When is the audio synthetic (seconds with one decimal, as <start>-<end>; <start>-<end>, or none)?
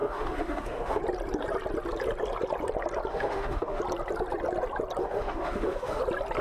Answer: 0.0-1.0; 3.1-3.8; 5.0-6.0